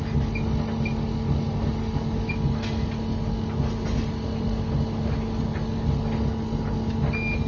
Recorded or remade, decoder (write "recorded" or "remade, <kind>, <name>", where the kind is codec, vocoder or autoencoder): recorded